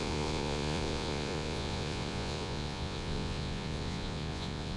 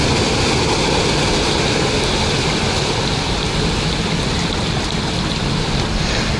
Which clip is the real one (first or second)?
second